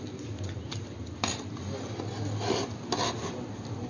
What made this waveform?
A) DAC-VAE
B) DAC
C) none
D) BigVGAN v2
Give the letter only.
C